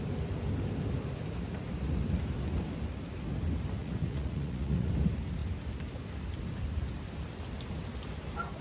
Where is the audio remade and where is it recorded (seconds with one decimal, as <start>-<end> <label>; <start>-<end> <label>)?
0.0-3.8 recorded; 3.8-4.9 remade; 4.9-8.6 recorded